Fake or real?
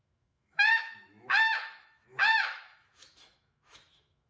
fake